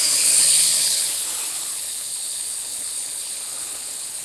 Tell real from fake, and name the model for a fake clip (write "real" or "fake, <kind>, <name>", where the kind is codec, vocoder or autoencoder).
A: fake, codec, HILCodec